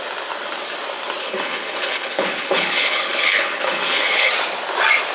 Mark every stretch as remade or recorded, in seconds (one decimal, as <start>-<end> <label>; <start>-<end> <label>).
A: 0.0-1.2 recorded; 1.2-4.3 remade; 4.3-5.1 recorded